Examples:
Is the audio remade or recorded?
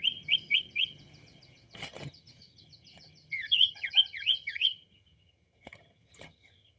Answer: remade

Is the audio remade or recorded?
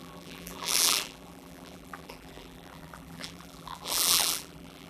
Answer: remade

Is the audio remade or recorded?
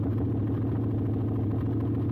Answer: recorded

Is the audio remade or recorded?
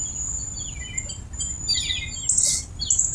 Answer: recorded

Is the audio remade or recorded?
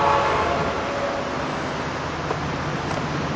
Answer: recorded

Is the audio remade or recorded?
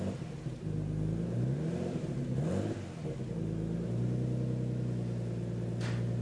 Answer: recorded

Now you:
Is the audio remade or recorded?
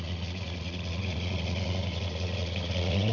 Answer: remade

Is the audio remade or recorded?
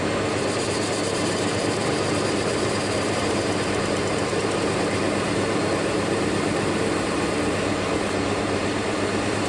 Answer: remade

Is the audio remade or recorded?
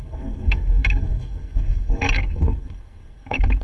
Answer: remade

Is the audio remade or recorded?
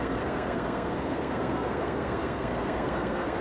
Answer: remade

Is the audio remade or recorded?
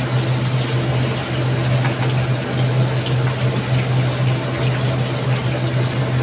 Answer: recorded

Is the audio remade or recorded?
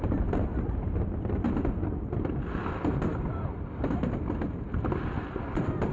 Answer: recorded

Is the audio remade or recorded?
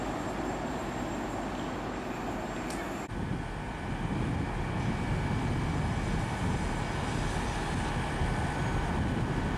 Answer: recorded